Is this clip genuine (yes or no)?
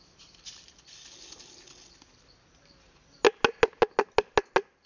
yes